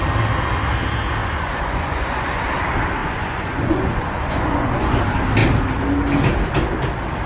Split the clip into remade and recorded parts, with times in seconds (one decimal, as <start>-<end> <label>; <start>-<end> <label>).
0.0-1.2 recorded; 1.2-2.5 remade; 2.5-3.0 recorded; 3.0-5.0 remade; 5.0-7.3 recorded